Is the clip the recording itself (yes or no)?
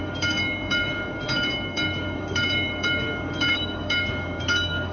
no